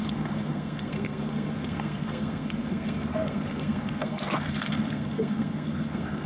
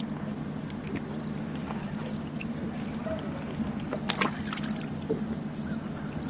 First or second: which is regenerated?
first